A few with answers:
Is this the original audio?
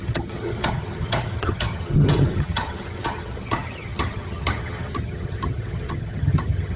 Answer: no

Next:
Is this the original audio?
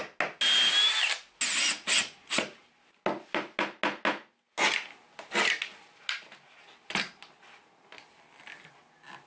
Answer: yes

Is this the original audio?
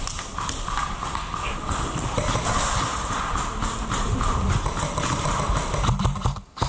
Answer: yes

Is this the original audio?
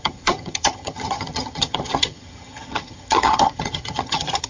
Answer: no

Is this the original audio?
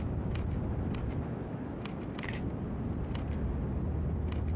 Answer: yes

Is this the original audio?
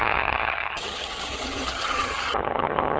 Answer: no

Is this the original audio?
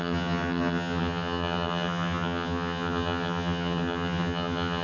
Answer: no